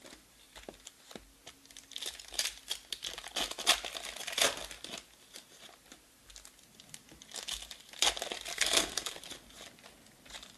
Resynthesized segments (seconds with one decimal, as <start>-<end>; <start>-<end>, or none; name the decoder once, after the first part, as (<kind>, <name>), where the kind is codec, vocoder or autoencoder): 8.5-9.2 (codec, SNAC)